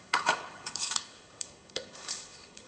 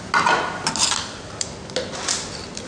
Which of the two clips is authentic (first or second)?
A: second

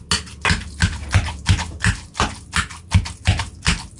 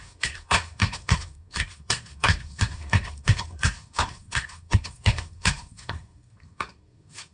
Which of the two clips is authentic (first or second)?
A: first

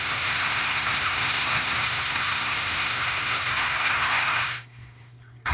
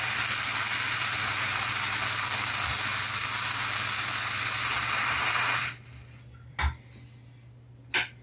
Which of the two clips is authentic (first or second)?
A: second